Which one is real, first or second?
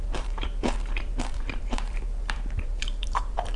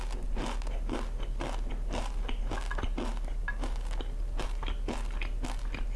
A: second